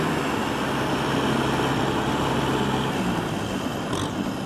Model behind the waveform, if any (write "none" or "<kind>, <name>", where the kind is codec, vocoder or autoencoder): none